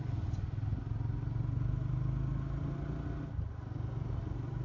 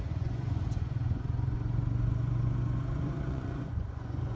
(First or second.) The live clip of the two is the first